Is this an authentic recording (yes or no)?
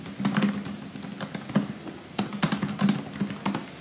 yes